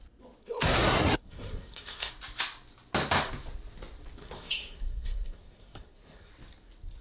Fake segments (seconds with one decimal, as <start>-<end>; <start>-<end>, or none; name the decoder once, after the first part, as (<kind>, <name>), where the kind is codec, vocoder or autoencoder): 0.4-2.1 (codec, SNAC); 4.2-6.3